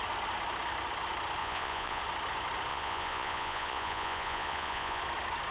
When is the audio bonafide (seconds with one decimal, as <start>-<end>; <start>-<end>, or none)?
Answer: 0.0-1.4; 2.0-2.7; 5.0-5.5